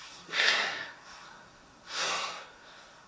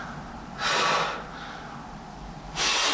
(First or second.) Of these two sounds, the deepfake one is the first